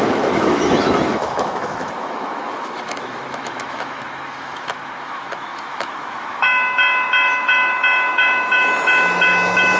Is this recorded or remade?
remade